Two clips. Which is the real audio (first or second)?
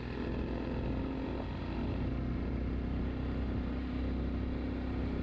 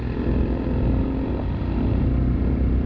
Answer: first